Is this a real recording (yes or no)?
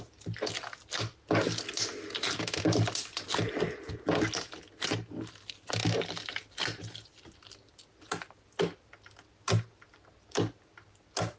yes